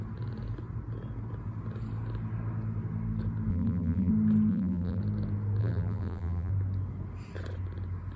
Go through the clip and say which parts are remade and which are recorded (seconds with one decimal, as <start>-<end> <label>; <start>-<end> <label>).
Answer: 0.0-3.5 recorded; 3.5-4.1 remade; 4.1-4.5 recorded; 4.5-5.0 remade; 5.0-5.6 recorded; 5.6-6.5 remade; 6.5-8.2 recorded

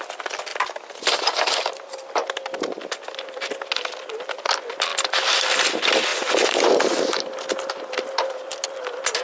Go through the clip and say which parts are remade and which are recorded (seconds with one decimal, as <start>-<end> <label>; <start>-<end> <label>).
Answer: 0.0-4.9 recorded; 4.9-5.6 remade; 5.6-9.2 recorded

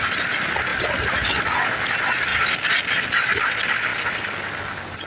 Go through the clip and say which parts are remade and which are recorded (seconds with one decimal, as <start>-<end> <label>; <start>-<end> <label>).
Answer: 0.0-0.7 recorded; 0.7-1.4 remade; 1.4-2.3 recorded; 2.3-2.9 remade; 2.9-3.9 recorded; 3.9-5.1 remade

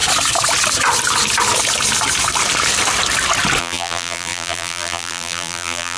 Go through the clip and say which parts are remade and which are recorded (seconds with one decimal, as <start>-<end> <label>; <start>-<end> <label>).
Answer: 0.0-3.6 recorded; 3.6-6.0 remade

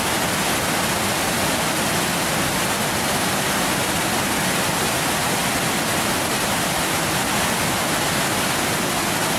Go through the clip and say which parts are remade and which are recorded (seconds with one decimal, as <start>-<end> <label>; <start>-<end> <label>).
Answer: 0.0-9.4 recorded

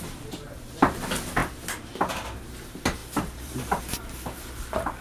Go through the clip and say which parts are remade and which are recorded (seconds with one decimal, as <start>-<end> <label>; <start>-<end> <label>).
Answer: 0.0-3.0 recorded; 3.0-3.8 remade; 3.8-5.0 recorded